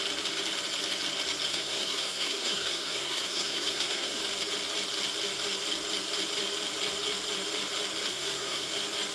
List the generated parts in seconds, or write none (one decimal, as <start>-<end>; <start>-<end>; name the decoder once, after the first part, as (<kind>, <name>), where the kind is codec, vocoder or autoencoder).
1.5-4.2 (codec, SNAC); 8.1-8.7